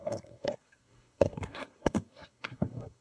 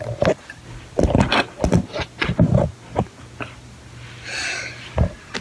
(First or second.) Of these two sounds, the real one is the second